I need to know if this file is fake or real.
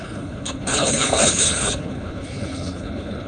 fake